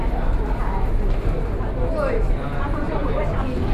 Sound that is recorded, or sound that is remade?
recorded